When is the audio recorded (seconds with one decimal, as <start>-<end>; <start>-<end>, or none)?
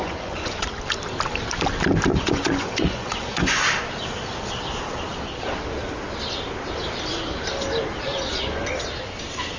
0.8-2.1; 3.6-8.1; 8.7-9.6